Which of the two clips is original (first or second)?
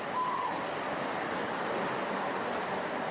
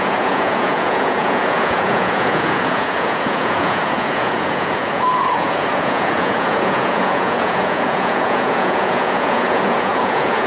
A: first